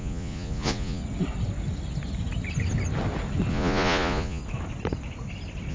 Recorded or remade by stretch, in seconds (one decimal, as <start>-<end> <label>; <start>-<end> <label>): 0.0-1.0 remade; 1.0-3.5 recorded; 3.5-4.4 remade; 4.4-5.7 recorded